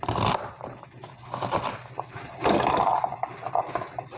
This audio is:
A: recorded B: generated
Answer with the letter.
A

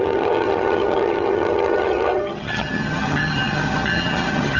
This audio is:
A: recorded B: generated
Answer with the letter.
B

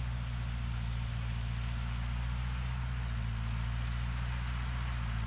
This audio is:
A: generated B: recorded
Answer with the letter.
B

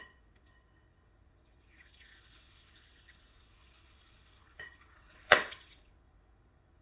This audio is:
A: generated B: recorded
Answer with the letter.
A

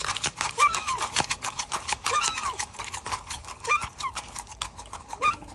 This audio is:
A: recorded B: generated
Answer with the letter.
B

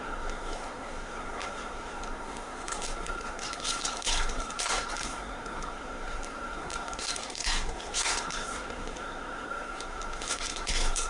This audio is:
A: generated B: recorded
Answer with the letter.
A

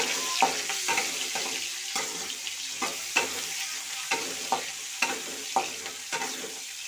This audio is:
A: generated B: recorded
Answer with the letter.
B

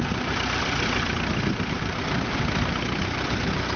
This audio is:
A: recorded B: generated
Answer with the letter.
A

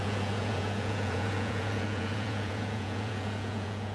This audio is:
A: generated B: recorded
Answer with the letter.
A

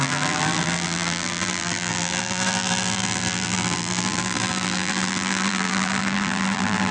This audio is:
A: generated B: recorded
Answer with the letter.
A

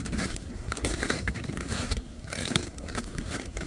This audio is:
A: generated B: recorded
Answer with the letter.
A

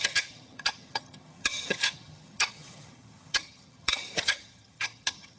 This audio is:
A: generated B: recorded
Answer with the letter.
A